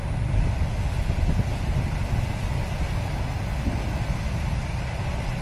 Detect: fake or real real